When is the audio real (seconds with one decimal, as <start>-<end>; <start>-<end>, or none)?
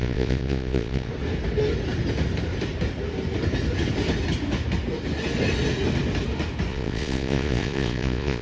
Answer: 1.1-6.7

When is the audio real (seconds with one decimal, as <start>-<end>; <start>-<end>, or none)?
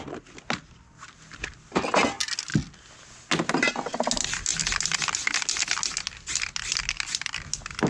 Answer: 0.0-7.9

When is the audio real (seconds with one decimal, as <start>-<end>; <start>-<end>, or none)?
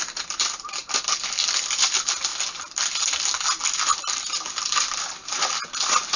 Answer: 0.0-6.2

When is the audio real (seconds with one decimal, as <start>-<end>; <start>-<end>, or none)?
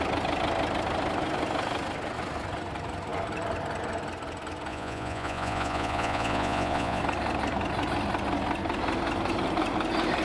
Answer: 0.0-4.7; 7.0-10.2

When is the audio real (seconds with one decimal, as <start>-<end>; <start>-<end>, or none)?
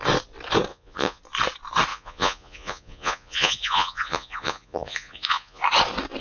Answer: 0.0-0.7; 1.2-1.9; 5.6-6.2